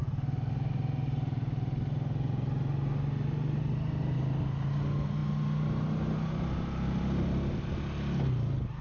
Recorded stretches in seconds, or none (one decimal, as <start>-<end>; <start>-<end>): 0.0-8.8